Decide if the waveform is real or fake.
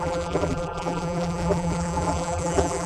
fake